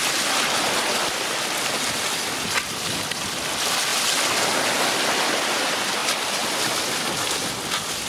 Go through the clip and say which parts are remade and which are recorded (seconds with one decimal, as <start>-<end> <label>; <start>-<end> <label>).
0.0-8.1 recorded